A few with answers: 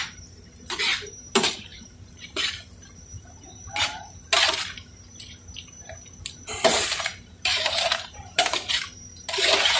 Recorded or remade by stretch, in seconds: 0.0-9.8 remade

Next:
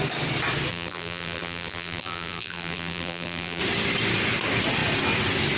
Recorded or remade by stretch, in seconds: 0.0-0.7 recorded; 0.7-3.6 remade; 3.6-5.6 recorded

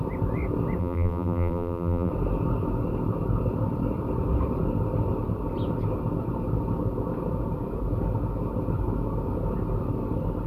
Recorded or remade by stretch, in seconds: 0.0-0.8 recorded; 0.8-2.1 remade; 2.1-10.5 recorded

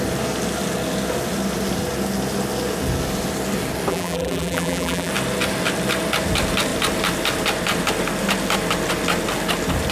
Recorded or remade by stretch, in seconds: 0.0-3.9 recorded; 3.9-5.1 remade; 5.1-9.9 recorded